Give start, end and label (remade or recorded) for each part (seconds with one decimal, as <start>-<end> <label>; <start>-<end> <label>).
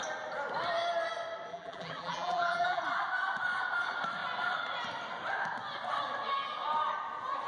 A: 0.0-1.5 recorded; 1.5-2.8 remade; 2.8-7.5 recorded